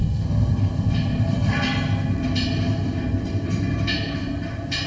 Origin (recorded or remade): recorded